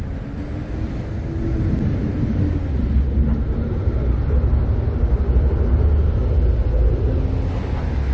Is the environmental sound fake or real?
real